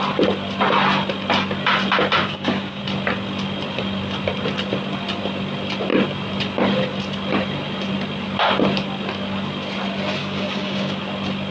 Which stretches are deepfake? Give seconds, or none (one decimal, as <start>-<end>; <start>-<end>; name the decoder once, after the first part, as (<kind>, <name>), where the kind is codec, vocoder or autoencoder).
2.2-2.8 (codec, DAC); 10.2-11.0